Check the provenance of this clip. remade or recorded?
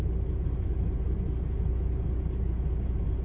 recorded